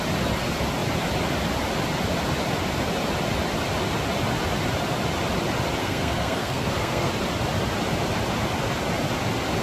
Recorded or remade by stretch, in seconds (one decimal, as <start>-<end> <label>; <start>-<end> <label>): 0.0-5.8 recorded; 5.8-7.1 remade; 7.1-9.6 recorded